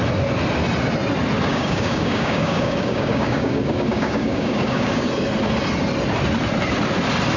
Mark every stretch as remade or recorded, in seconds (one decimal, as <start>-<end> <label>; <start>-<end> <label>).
0.0-1.5 recorded; 1.5-5.1 remade; 5.1-7.4 recorded